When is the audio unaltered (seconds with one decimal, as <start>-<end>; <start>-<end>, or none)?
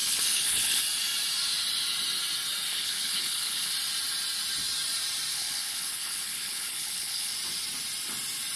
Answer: 0.8-2.7; 3.7-5.3; 7.3-8.6